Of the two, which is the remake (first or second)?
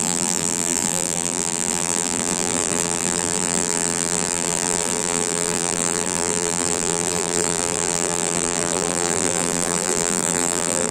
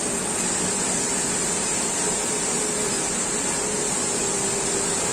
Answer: first